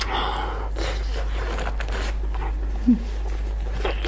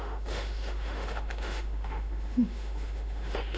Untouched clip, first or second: first